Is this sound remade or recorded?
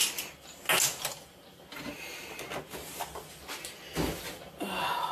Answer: recorded